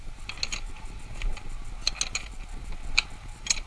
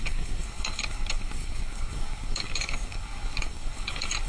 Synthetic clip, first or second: second